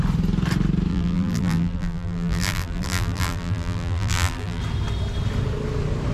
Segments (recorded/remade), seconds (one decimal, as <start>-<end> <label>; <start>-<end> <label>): 0.0-0.9 recorded; 0.9-4.6 remade; 4.6-6.1 recorded